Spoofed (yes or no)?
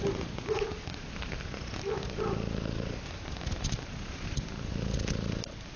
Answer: no